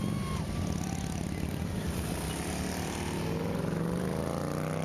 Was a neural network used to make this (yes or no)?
no